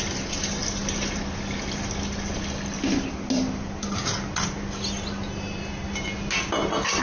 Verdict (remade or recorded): recorded